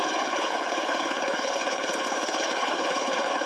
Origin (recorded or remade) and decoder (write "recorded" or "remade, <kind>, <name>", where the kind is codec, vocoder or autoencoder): remade, codec, HILCodec